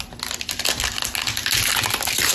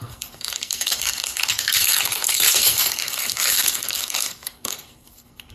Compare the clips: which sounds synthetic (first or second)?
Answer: second